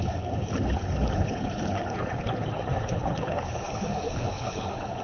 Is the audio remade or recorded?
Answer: remade